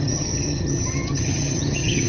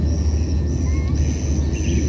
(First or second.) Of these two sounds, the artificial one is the first